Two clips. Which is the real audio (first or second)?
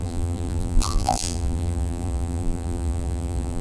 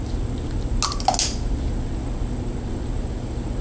second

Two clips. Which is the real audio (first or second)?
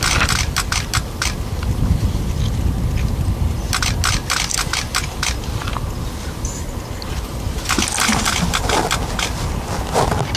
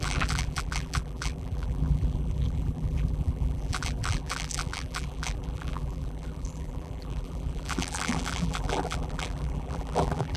first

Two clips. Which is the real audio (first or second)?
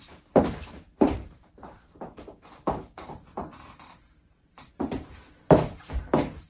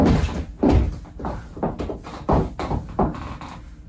second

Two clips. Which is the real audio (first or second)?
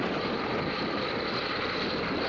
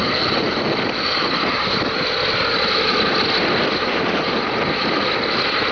second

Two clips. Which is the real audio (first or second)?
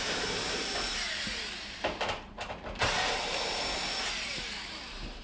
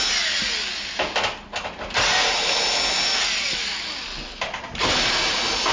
second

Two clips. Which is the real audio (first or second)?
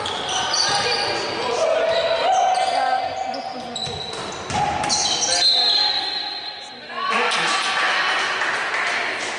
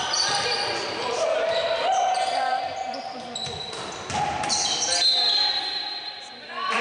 first